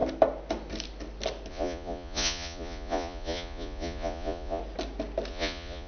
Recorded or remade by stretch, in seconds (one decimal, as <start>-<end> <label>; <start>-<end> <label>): 0.0-1.5 recorded; 1.5-4.6 remade; 4.6-5.3 recorded; 5.3-5.9 remade